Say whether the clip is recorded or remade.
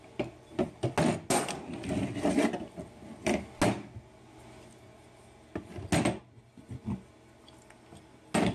recorded